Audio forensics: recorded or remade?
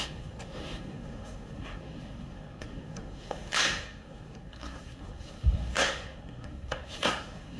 remade